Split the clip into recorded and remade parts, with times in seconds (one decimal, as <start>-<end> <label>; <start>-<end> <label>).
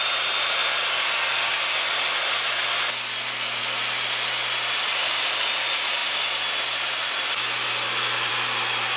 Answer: 0.0-9.0 recorded